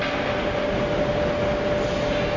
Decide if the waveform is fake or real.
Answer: real